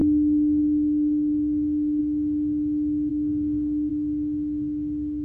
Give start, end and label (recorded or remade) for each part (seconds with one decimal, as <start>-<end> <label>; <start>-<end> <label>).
0.0-2.0 remade; 2.0-3.1 recorded; 3.1-3.9 remade; 3.9-5.2 recorded